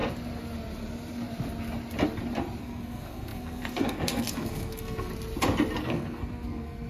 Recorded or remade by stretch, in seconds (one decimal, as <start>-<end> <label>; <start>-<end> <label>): 0.0-2.6 recorded; 2.6-5.1 remade; 5.1-5.8 recorded; 5.8-6.9 remade